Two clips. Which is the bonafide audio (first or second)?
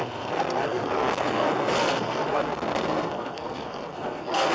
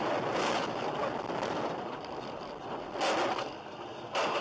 second